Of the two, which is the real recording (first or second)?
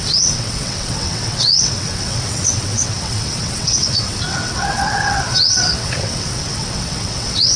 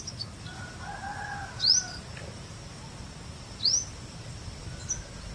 second